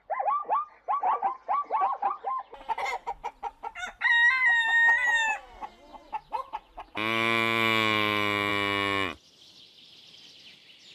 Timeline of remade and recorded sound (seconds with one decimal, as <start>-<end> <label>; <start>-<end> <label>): 0.0-0.4 recorded; 0.4-1.0 remade; 1.0-5.9 recorded; 5.9-8.5 remade; 8.5-10.9 recorded